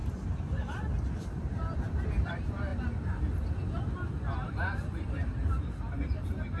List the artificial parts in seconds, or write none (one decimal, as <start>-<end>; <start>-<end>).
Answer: 0.9-2.7; 4.5-6.6